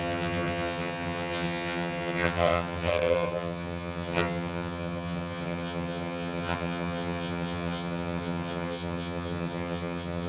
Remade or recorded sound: remade